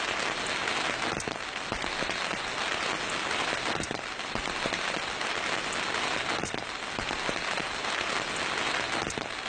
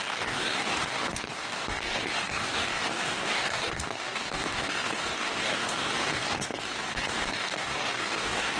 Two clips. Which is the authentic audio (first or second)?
first